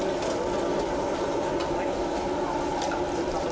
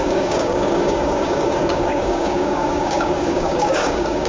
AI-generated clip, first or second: second